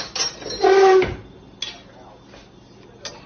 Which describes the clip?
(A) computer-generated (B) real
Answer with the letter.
B